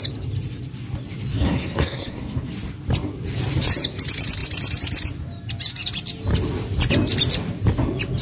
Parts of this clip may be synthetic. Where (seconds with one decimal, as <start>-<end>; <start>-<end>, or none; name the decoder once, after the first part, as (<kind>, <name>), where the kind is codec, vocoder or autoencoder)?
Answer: 1.3-2.5 (codec, SNAC)